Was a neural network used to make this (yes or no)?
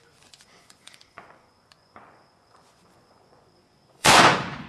yes